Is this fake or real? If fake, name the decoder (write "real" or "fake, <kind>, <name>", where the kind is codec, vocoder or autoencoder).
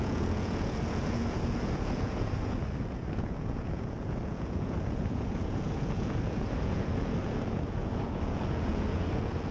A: fake, vocoder, Vocos